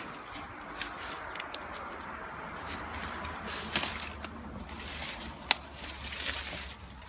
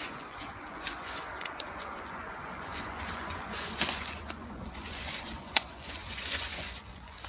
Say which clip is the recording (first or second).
first